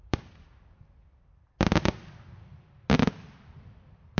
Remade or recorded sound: recorded